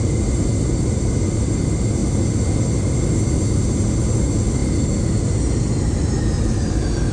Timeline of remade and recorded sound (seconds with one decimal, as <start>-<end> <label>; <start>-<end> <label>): 0.0-7.1 recorded

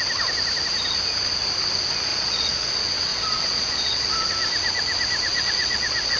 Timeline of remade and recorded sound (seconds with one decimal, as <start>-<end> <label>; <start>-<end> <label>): 0.0-2.1 recorded; 2.1-2.7 remade; 2.7-3.1 recorded; 3.1-4.3 remade; 4.3-5.3 recorded; 5.3-6.2 remade

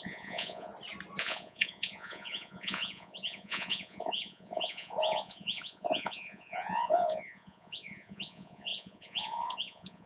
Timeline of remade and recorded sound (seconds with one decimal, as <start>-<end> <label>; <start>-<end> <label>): 0.0-0.7 remade; 0.7-1.2 recorded; 1.2-10.1 remade

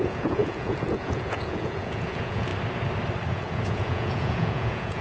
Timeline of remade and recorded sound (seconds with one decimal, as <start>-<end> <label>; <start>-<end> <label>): 0.0-2.5 remade; 2.5-3.3 recorded; 3.3-5.0 remade

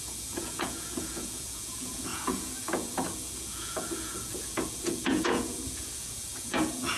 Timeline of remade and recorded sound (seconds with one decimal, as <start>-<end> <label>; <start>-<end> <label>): 0.0-7.0 remade

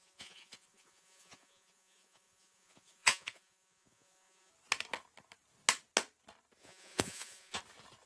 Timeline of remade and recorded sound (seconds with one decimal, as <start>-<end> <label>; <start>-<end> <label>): 0.0-4.5 remade; 4.5-6.6 recorded; 6.6-7.6 remade; 7.6-8.1 recorded